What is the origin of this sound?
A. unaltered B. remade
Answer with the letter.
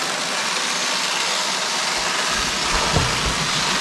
A